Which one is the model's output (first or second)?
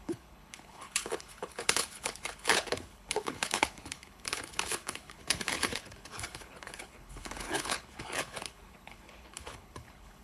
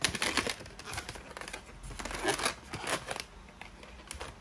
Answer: first